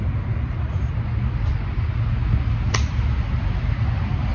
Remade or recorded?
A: recorded